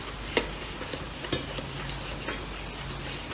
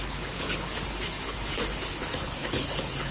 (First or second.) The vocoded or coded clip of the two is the second